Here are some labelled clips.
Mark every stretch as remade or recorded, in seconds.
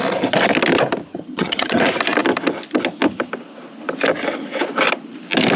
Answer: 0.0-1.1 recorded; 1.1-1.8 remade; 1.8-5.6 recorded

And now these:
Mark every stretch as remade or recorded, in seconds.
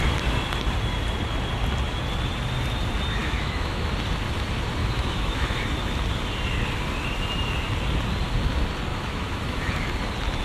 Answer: 0.0-3.2 recorded; 3.2-3.9 remade; 3.9-4.8 recorded; 4.8-5.6 remade; 5.6-8.9 recorded; 8.9-9.7 remade; 9.7-10.4 recorded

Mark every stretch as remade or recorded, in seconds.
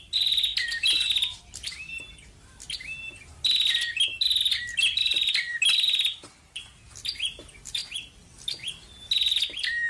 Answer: 0.0-9.9 recorded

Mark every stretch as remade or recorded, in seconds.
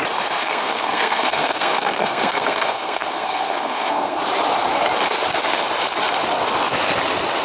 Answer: 0.0-0.4 recorded; 0.4-4.2 remade; 4.2-7.4 recorded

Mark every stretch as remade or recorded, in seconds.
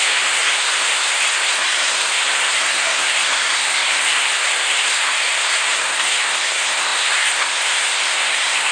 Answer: 0.0-8.7 remade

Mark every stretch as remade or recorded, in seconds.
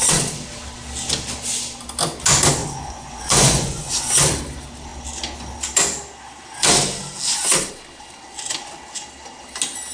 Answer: 0.0-2.6 recorded; 2.6-3.9 remade; 3.9-9.9 recorded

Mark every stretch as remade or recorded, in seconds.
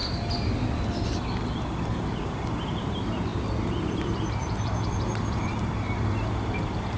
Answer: 0.0-1.8 recorded; 1.8-7.0 remade